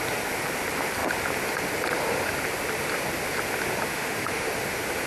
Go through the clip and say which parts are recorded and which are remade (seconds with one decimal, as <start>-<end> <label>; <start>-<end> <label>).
0.0-3.9 recorded; 3.9-4.5 remade; 4.5-5.1 recorded

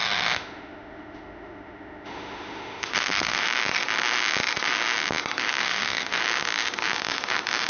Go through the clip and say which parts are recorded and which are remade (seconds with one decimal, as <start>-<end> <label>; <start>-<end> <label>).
0.0-3.4 remade; 3.4-5.6 recorded; 5.6-6.2 remade; 6.2-7.7 recorded